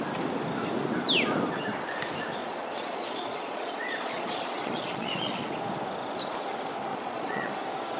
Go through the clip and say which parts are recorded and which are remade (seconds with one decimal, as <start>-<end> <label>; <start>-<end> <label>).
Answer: 0.0-2.4 recorded; 2.4-5.5 remade; 5.5-6.9 recorded; 6.9-7.5 remade; 7.5-8.0 recorded

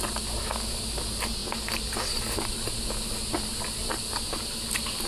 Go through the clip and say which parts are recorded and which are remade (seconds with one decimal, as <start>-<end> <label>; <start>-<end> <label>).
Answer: 0.0-5.1 recorded

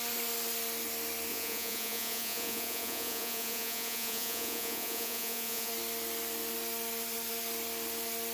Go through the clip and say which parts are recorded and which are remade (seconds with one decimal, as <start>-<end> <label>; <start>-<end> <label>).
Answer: 0.0-1.3 recorded; 1.3-5.7 remade; 5.7-8.3 recorded

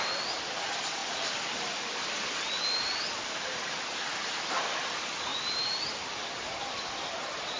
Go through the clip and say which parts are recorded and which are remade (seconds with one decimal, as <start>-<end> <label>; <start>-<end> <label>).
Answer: 0.0-7.6 recorded

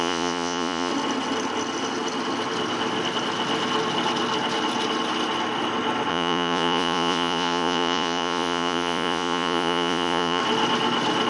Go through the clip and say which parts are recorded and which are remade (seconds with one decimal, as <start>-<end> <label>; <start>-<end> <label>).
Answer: 0.0-0.9 remade; 0.9-6.1 recorded; 6.1-10.4 remade; 10.4-11.3 recorded

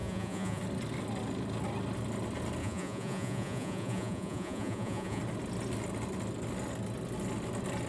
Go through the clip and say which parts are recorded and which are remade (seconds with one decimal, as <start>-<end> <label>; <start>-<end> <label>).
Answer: 0.0-0.6 remade; 0.6-2.6 recorded; 2.6-5.2 remade; 5.2-7.9 recorded

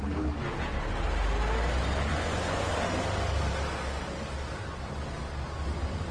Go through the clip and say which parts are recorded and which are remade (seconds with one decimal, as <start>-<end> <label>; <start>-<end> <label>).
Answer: 0.0-2.1 recorded; 2.1-2.7 remade; 2.7-6.1 recorded